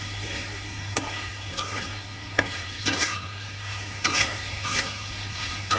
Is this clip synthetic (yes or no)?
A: yes